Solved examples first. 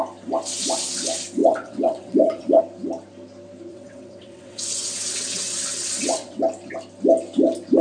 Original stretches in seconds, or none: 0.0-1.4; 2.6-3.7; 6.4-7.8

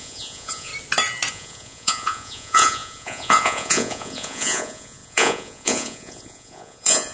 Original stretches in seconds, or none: 0.7-1.3